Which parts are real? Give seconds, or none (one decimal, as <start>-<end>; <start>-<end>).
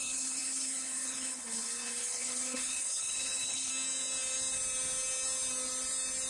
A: 3.7-6.3